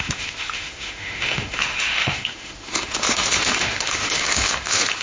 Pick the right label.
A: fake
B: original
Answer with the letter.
A